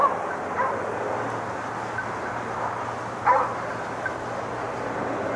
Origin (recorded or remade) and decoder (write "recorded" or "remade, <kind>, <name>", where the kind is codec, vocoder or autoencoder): recorded